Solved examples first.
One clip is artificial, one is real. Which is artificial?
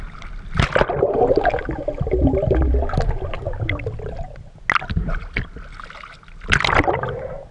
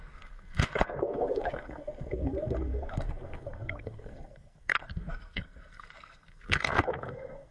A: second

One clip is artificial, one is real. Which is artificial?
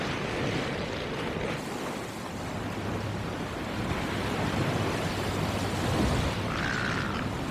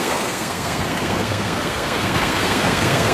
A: second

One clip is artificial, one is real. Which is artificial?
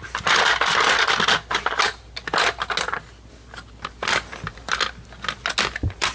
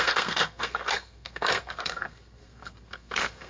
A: second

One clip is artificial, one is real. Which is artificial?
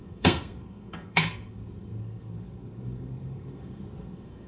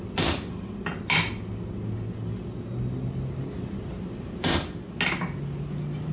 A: first